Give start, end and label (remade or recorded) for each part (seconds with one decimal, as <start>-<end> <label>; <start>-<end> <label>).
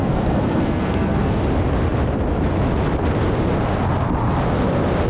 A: 0.0-1.4 remade; 1.4-5.1 recorded